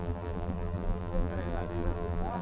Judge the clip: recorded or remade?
remade